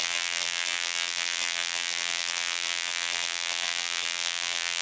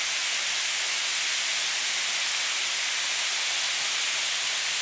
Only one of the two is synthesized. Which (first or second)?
first